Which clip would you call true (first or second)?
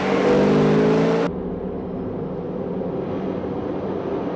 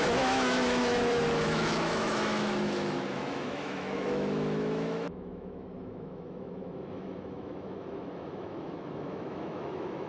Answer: first